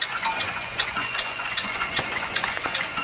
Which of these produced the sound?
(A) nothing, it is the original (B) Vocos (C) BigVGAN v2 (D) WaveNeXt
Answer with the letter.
B